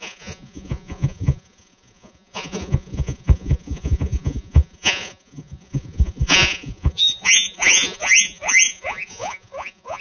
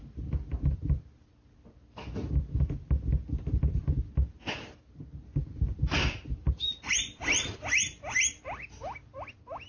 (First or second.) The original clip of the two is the second